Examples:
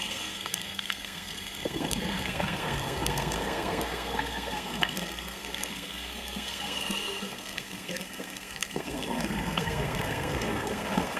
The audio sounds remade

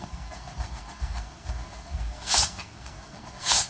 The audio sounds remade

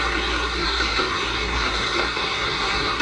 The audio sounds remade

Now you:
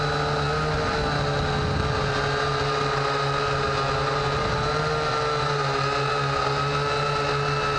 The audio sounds recorded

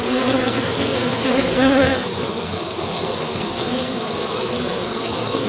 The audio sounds remade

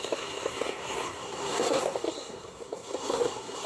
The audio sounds remade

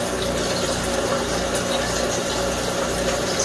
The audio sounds recorded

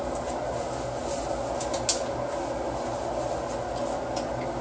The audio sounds recorded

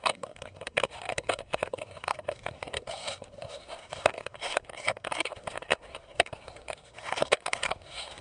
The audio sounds remade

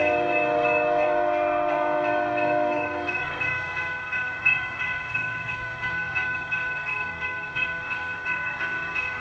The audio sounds remade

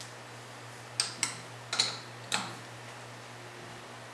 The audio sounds recorded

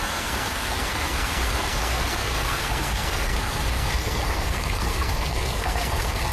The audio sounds remade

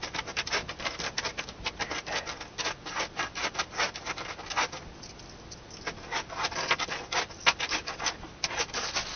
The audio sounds recorded